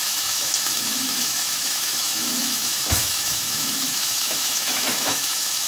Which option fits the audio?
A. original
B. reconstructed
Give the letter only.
B